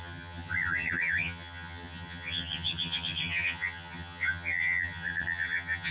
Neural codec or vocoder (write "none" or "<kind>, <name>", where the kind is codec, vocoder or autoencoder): vocoder, HiFi-GAN